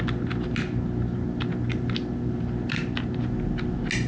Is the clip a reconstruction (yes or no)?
no